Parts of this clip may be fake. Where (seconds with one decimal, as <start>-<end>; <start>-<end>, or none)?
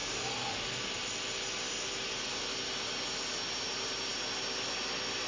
none